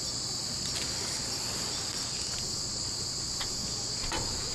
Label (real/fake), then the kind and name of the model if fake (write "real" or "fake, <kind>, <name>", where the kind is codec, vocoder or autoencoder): real